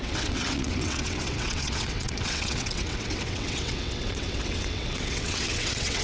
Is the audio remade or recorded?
remade